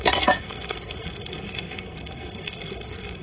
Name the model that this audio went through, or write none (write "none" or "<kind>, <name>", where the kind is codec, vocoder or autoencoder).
codec, SNAC